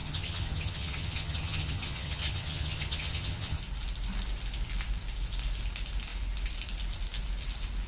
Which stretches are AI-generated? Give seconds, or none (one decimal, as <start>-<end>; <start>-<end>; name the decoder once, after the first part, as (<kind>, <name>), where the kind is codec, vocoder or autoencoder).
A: 0.0-3.6 (vocoder, HiFi-GAN)